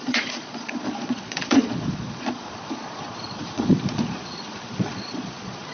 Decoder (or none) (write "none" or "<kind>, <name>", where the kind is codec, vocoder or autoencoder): vocoder, Vocos